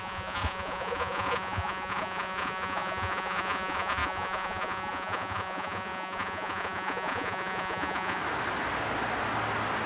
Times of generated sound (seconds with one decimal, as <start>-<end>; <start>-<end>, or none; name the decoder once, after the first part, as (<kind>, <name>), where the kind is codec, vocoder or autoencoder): 0.0-8.2 (vocoder, Vocos)